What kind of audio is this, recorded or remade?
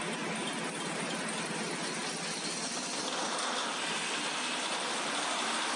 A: recorded